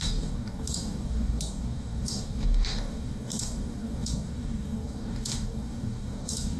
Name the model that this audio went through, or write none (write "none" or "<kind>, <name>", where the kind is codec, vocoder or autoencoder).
codec, DAC